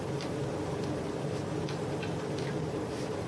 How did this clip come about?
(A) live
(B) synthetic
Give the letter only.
B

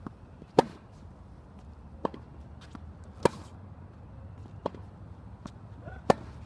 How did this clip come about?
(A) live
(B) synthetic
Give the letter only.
A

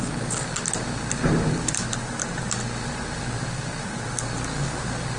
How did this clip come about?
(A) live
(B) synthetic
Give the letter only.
A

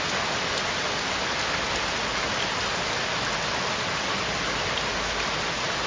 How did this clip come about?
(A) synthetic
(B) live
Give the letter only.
B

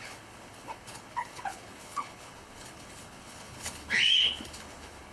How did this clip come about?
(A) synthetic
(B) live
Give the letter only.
A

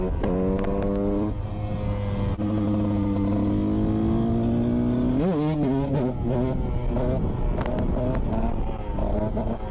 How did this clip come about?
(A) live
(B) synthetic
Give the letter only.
A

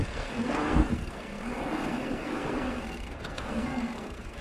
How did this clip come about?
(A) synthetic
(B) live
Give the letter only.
A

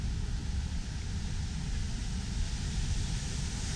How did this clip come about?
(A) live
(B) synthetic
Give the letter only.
A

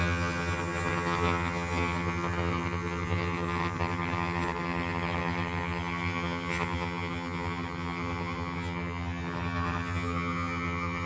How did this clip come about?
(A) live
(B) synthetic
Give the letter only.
B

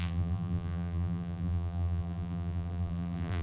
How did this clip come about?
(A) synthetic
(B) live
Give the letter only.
A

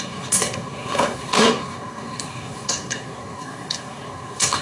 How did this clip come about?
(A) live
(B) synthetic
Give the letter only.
B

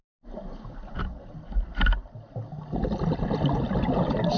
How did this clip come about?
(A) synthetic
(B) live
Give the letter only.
B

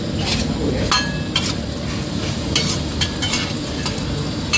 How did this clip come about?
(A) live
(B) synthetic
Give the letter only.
A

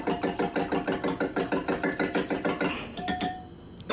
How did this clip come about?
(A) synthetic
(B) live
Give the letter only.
B